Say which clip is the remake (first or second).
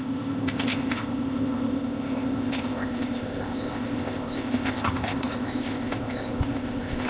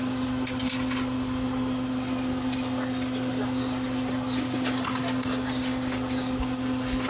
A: first